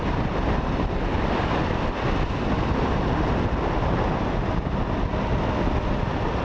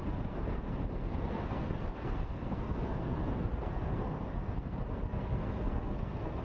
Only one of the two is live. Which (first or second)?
first